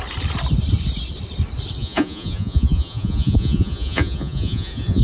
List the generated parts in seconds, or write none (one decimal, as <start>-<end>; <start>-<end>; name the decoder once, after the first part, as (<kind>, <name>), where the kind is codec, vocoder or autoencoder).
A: 1.8-5.0 (vocoder, Vocos)